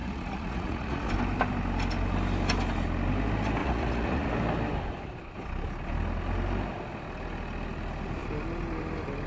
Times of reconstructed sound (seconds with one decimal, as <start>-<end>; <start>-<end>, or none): 0.0-1.1; 3.6-4.3